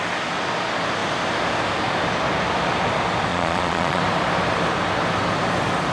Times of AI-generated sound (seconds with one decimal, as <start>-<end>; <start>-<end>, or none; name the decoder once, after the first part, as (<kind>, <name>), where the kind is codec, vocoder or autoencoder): 3.3-4.0 (vocoder, Vocos)